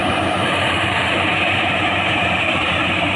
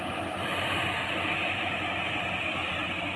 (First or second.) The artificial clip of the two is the first